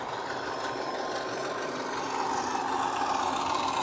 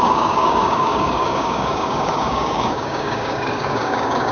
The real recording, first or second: first